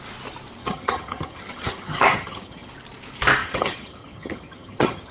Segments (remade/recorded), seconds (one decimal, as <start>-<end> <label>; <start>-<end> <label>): 0.0-0.6 recorded; 0.6-2.7 remade; 2.7-3.4 recorded; 3.4-5.1 remade